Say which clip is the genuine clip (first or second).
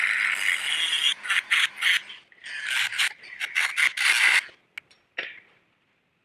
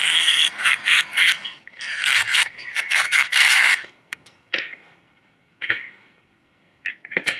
first